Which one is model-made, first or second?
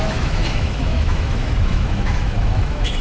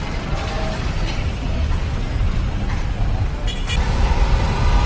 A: first